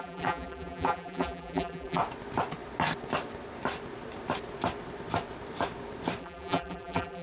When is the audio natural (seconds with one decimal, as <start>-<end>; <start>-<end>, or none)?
2.0-6.2